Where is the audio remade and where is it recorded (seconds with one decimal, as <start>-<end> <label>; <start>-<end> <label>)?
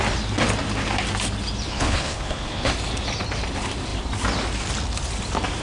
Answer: 0.0-1.7 recorded; 1.7-2.7 remade; 2.7-5.6 recorded